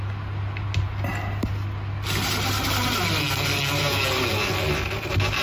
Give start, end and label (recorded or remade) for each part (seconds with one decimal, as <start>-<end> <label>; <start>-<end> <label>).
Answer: 0.0-5.4 recorded